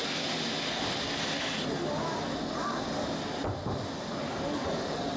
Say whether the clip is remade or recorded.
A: recorded